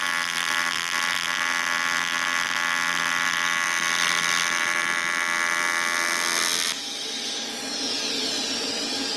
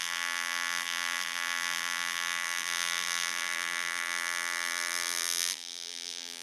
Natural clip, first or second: first